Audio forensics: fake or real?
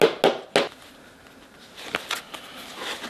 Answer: real